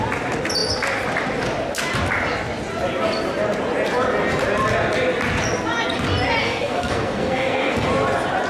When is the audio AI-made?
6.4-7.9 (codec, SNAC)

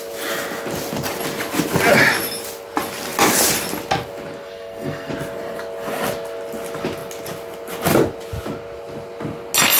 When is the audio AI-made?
4.4-5.1 (codec, SNAC)